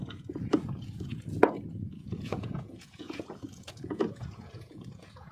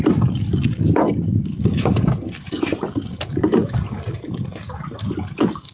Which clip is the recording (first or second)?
second